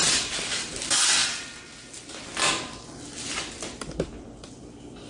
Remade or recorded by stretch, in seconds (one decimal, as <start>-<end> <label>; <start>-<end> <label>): 0.0-1.2 recorded; 1.2-2.0 remade; 2.0-5.1 recorded